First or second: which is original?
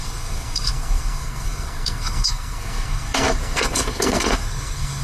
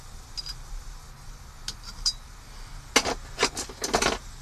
second